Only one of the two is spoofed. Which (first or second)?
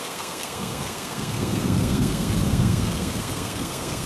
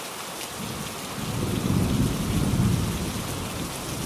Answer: first